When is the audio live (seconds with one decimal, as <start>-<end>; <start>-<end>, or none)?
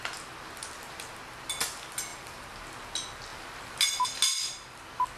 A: 0.0-5.2